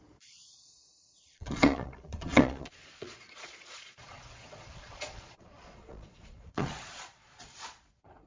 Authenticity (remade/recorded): remade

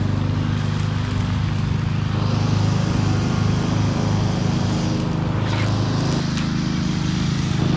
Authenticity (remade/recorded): recorded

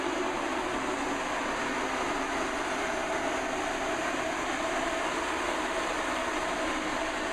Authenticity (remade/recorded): recorded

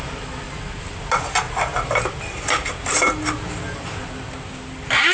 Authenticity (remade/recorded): recorded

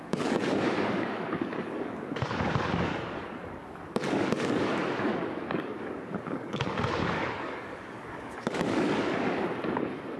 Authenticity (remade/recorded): remade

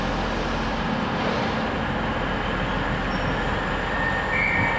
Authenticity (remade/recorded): recorded